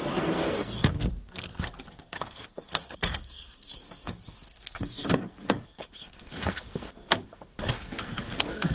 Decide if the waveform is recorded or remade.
remade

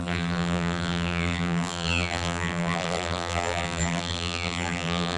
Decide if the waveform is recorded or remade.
remade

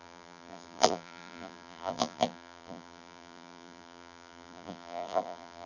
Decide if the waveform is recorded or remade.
remade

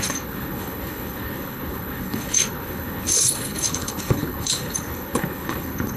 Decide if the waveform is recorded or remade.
remade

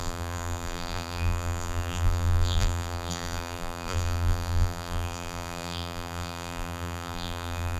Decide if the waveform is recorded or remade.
remade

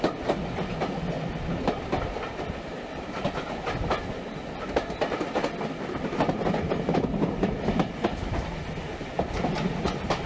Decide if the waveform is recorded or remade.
recorded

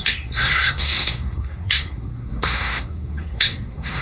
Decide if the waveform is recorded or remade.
remade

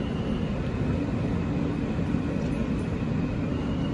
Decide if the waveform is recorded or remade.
recorded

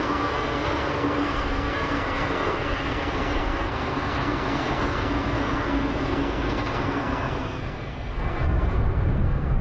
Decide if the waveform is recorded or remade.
remade